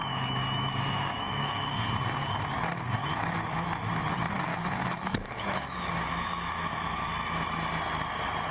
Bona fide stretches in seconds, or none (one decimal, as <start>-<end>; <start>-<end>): 1.8-3.0; 3.9-4.5; 7.1-8.5